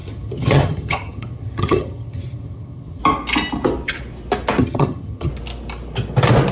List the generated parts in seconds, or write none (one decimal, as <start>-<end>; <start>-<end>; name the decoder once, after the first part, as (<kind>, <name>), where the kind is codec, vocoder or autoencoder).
0.0-3.0 (vocoder, HiFi-GAN); 4.6-5.3

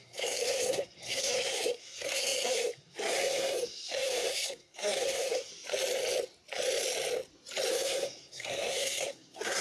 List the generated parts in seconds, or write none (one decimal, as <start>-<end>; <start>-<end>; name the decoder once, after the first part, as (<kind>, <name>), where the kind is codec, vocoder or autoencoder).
0.0-5.5 (codec, SNAC); 7.7-9.6

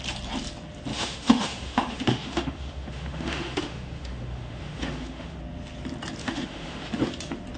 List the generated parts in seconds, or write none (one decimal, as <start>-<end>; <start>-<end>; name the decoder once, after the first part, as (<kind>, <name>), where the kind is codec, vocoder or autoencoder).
0.9-5.4 (autoencoder, DAC-VAE); 6.2-6.9